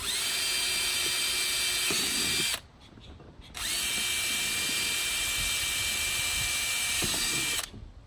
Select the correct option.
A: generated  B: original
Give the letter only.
B